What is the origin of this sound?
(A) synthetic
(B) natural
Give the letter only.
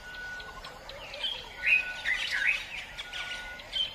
B